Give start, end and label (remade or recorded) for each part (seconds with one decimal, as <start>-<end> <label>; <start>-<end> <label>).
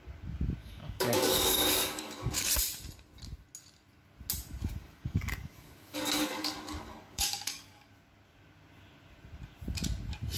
0.0-0.6 recorded; 0.6-2.5 remade; 2.5-4.8 recorded; 4.8-7.9 remade; 7.9-10.4 recorded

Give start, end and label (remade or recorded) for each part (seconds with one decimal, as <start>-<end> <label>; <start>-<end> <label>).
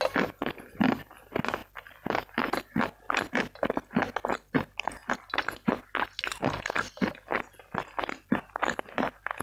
0.0-9.4 recorded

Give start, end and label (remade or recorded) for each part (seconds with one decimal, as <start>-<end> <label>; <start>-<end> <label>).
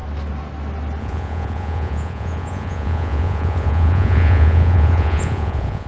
0.0-1.0 recorded; 1.0-5.9 remade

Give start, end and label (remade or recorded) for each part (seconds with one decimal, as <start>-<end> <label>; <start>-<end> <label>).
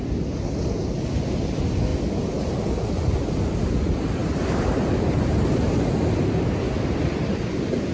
0.0-4.2 recorded; 4.2-6.2 remade; 6.2-7.9 recorded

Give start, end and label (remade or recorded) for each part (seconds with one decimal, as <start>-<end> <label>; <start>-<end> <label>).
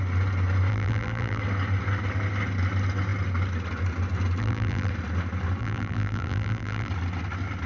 0.0-0.7 recorded; 0.7-1.4 remade; 1.4-4.4 recorded; 4.4-4.9 remade; 4.9-5.6 recorded; 5.6-6.9 remade; 6.9-7.7 recorded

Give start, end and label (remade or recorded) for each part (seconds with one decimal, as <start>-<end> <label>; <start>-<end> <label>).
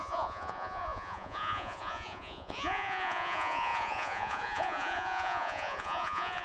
0.0-6.4 remade